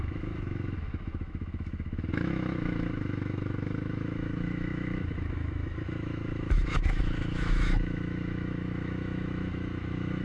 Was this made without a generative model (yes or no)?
no